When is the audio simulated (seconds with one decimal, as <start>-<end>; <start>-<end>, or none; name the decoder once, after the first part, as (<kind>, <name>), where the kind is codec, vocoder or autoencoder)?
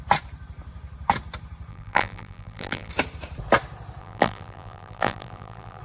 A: 1.7-2.9 (vocoder, BigVGAN v2); 4.0-5.8